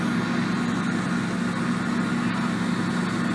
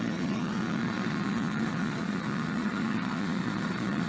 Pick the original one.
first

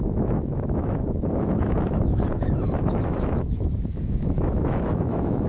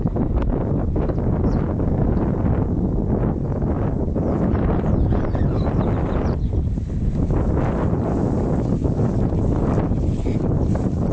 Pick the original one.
second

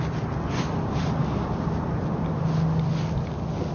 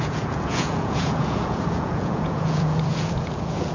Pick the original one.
first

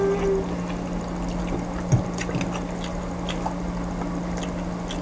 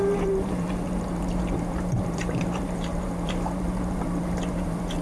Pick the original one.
first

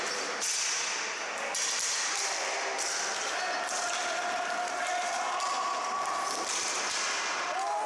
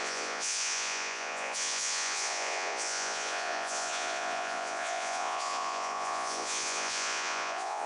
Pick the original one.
first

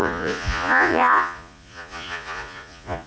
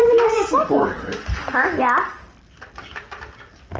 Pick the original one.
second